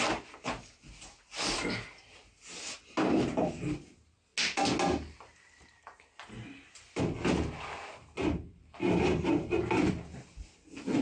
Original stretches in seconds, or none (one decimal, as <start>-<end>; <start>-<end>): 0.0-11.0